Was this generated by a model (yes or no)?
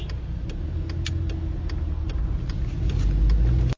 no